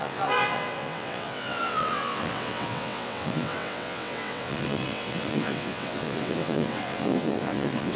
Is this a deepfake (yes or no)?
yes